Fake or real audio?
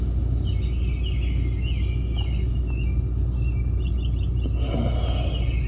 real